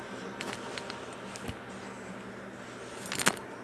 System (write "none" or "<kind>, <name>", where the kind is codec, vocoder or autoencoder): none